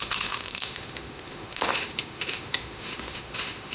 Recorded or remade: remade